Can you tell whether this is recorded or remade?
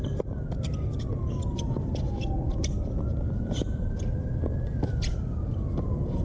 recorded